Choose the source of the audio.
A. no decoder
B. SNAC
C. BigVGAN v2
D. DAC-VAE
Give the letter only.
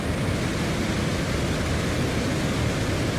A